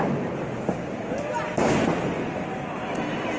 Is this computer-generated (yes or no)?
no